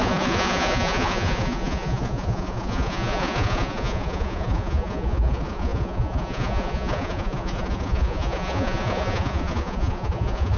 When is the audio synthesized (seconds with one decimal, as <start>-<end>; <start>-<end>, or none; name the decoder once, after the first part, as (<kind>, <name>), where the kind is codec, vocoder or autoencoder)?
0.0-10.6 (vocoder, Vocos)